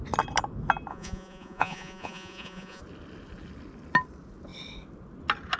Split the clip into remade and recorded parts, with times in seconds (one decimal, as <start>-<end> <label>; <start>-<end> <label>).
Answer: 0.0-0.9 recorded; 0.9-2.8 remade; 2.8-5.6 recorded